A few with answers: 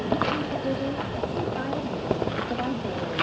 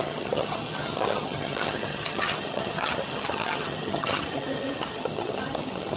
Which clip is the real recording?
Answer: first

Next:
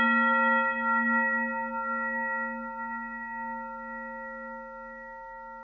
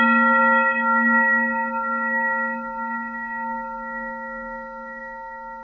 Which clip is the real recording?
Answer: first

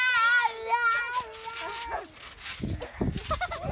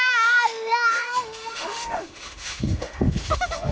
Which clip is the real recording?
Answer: first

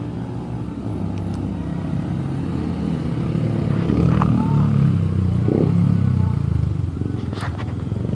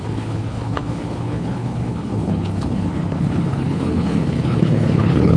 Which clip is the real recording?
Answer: first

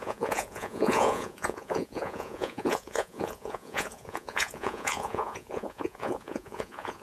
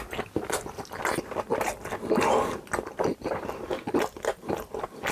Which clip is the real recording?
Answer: second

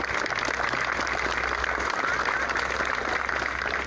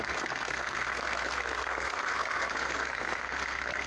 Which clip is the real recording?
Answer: first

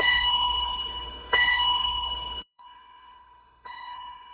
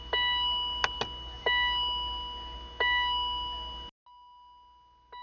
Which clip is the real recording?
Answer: second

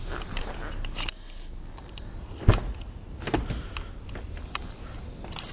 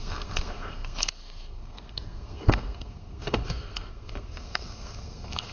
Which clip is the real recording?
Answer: first